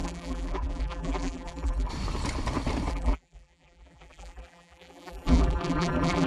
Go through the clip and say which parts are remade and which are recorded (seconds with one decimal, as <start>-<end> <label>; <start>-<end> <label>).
0.0-1.9 remade; 1.9-2.9 recorded; 2.9-6.3 remade